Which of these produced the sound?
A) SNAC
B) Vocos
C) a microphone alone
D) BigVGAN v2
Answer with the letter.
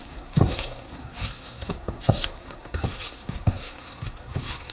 A